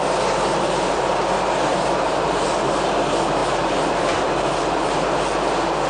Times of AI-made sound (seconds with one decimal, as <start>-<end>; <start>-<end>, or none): 1.7-2.5; 3.4-5.2